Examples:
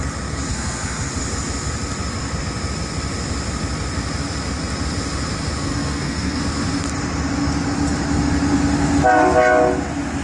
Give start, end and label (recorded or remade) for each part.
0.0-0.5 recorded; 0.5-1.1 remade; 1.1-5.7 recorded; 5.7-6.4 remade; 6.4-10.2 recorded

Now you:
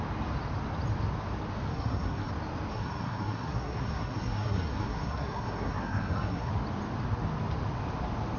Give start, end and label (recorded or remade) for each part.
0.0-1.7 recorded; 1.7-2.3 remade; 2.3-2.7 recorded; 2.7-6.5 remade; 6.5-8.4 recorded